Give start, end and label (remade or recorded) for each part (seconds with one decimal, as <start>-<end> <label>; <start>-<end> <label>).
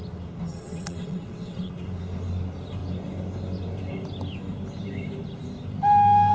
0.0-0.5 recorded; 0.5-1.7 remade; 1.7-6.3 recorded